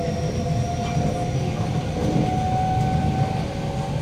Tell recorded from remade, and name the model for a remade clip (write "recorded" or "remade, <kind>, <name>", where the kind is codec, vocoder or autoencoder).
recorded